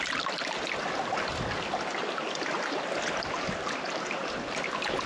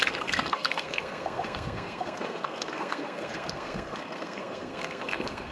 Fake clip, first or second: second